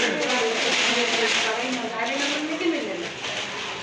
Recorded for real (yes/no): yes